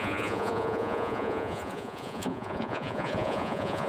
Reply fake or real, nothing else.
fake